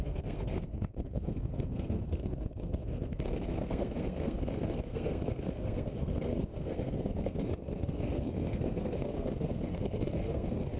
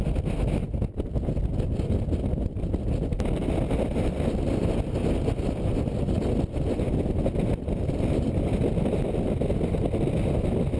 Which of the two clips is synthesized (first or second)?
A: first